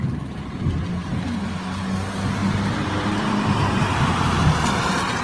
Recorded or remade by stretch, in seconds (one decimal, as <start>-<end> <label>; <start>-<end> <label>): 0.0-2.4 recorded; 2.4-3.8 remade; 3.8-5.2 recorded